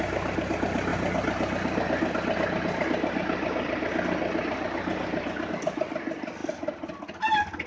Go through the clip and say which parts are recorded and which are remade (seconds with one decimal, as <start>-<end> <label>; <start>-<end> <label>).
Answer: 0.0-7.7 recorded